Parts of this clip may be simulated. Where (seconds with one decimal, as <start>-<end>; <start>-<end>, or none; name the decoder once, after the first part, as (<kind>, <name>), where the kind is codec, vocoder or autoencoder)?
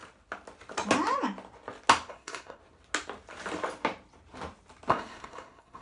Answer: 2.1-2.6 (codec, SNAC); 4.9-5.8